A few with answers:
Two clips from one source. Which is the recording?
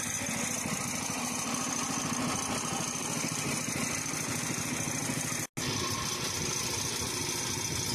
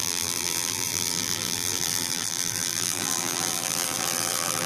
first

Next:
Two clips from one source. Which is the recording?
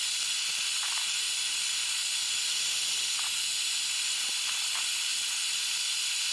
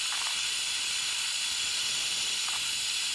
first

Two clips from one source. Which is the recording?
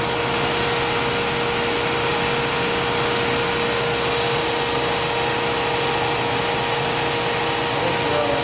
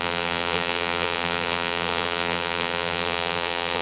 first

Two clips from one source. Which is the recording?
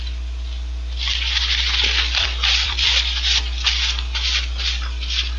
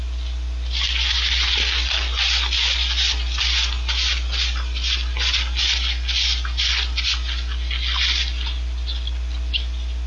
second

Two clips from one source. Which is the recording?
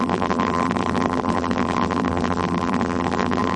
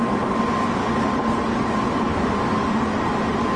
second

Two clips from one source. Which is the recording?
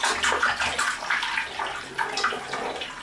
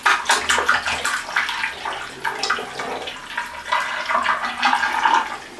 second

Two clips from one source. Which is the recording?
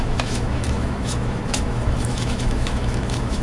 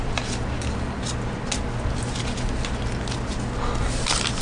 second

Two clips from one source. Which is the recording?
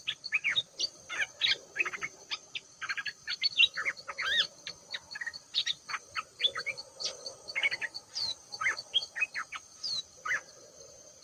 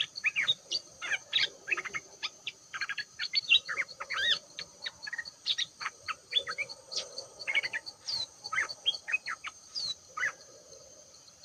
first